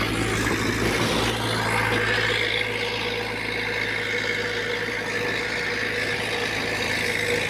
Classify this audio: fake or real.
real